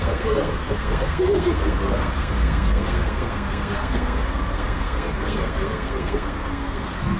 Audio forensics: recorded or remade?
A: remade